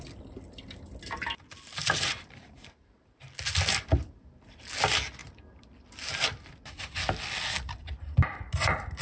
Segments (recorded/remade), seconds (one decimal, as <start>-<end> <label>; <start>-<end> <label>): 0.0-1.8 recorded; 1.8-2.8 remade; 2.8-9.0 recorded